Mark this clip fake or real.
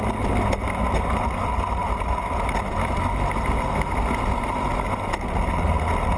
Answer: real